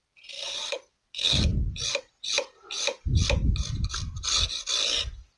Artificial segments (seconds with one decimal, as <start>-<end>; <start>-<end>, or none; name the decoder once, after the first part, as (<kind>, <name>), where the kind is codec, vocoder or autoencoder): none